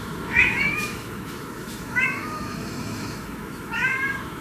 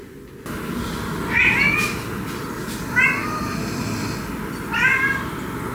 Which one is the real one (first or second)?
second